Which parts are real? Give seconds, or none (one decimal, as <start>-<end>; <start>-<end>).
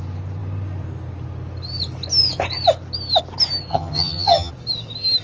0.0-3.7; 4.5-5.2